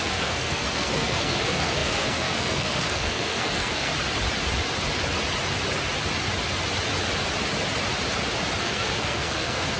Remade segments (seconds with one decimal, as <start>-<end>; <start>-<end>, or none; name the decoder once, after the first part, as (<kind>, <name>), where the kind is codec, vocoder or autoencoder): 0.0-3.9 (codec, SNAC); 8.6-9.8